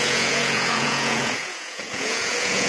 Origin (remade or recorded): remade